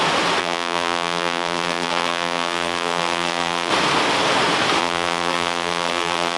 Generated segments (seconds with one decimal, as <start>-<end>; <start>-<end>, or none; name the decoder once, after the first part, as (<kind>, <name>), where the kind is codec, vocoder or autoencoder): 0.4-3.7 (vocoder, BigVGAN v2); 4.8-6.4